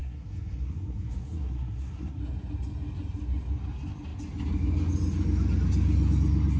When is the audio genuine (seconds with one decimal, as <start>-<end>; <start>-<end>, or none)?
2.2-6.6